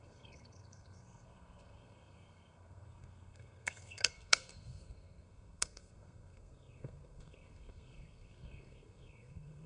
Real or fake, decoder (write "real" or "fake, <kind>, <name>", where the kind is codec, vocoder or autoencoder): fake, codec, SNAC